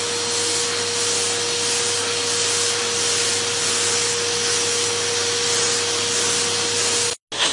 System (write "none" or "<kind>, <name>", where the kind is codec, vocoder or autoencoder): none